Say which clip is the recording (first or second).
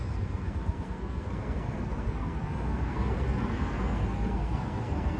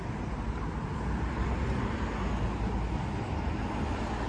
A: second